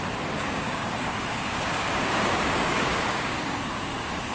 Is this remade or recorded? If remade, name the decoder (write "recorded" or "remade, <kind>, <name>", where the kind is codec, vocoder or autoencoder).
remade, codec, DAC